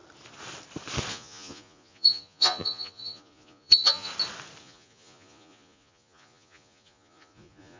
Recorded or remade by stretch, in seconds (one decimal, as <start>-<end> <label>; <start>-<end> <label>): 0.0-1.1 recorded; 1.1-4.1 remade; 4.1-4.6 recorded; 4.6-7.8 remade